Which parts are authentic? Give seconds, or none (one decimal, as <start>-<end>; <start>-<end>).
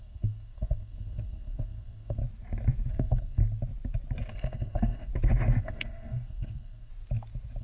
2.2-2.9; 3.4-4.3; 5.1-5.6; 6.9-7.6